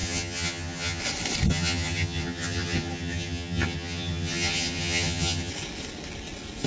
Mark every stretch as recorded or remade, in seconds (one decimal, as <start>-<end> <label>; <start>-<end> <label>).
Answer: 0.0-1.0 remade; 1.0-1.5 recorded; 1.5-5.5 remade; 5.5-6.7 recorded